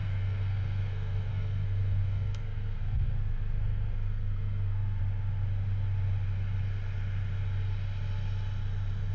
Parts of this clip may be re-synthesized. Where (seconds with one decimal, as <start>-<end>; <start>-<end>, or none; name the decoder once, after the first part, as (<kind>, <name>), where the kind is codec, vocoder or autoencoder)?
0.0-5.0 (codec, SNAC)

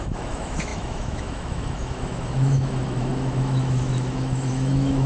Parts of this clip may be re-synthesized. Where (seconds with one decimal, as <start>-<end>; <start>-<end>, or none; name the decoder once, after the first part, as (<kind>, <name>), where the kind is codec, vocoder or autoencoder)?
0.0-5.1 (autoencoder, DAC-VAE)